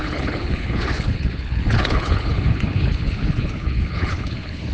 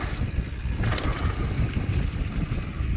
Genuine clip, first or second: second